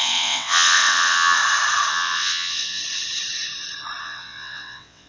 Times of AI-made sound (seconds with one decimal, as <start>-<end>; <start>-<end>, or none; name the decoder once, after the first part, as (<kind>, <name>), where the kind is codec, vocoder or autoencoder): 0.0-1.4 (vocoder, WaveNeXt); 1.9-2.8; 4.0-5.1

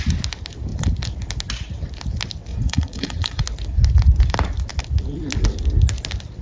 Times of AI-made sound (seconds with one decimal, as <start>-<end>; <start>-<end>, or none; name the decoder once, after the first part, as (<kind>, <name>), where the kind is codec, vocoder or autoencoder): 2.5-3.4 (vocoder, Vocos)

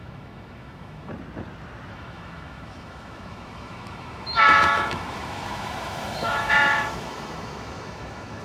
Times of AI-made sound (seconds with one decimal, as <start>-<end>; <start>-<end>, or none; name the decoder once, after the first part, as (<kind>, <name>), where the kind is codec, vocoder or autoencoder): 0.0-1.1 (autoencoder, DAC-VAE); 1.9-8.4

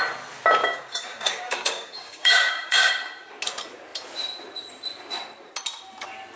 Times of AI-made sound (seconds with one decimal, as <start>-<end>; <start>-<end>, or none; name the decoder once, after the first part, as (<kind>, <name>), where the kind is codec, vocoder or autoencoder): 0.6-2.9 (codec, DAC)

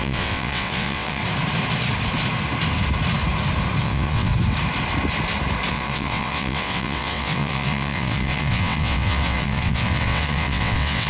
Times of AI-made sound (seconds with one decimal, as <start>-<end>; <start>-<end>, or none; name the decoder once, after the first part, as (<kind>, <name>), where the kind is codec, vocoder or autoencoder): 0.0-1.2 (vocoder, WaveNeXt); 3.8-4.3; 5.7-11.1

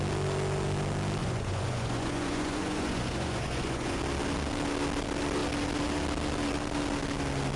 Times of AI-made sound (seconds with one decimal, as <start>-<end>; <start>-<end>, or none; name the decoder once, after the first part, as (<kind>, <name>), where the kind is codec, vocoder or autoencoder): 1.2-4.0 (vocoder, Vocos)

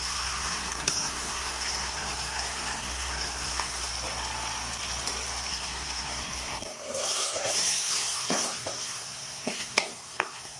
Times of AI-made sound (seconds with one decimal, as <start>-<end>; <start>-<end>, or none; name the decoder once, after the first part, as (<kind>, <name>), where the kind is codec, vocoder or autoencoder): 0.0-3.9 (codec, SNAC); 5.5-10.6

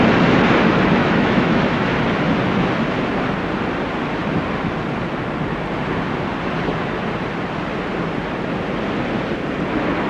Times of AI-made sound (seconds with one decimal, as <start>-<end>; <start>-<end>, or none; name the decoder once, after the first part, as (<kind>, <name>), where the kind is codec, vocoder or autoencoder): 1.0-1.9 (autoencoder, DAC-VAE)